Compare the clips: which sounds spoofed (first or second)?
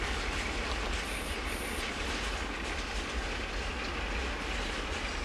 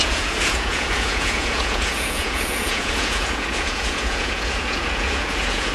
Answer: second